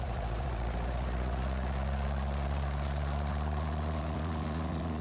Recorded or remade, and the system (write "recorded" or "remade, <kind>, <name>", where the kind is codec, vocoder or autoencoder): remade, vocoder, Vocos